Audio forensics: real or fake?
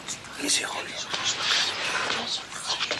real